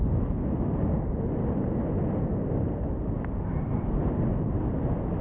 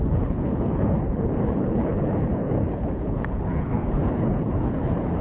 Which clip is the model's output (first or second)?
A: second